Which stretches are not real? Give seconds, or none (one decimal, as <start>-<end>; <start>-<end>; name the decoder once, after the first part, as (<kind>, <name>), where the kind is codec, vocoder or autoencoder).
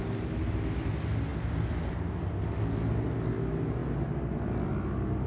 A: none